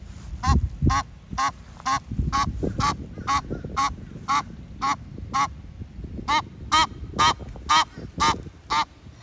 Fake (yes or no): no